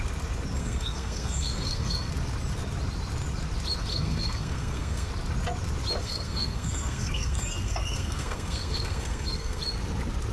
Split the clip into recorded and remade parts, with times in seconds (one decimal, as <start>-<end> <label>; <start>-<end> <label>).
0.0-0.6 recorded; 0.6-2.1 remade; 2.1-3.9 recorded; 3.9-5.1 remade; 5.1-6.0 recorded; 6.0-9.6 remade; 9.6-10.3 recorded